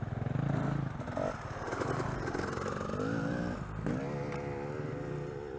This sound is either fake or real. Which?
real